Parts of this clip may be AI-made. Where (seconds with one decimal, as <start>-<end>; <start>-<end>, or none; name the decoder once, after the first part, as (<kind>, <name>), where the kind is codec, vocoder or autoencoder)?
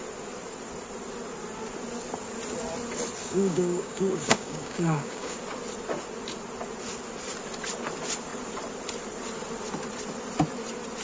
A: 3.2-5.4 (codec, DAC)